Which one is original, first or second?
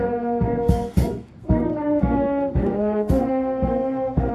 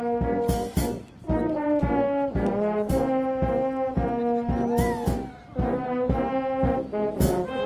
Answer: second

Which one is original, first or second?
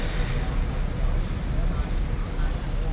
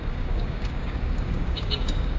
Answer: first